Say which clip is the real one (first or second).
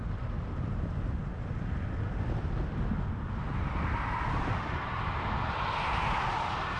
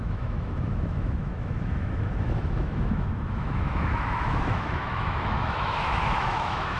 first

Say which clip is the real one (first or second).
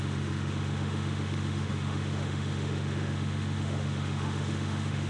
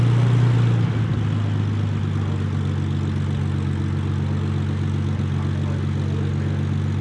second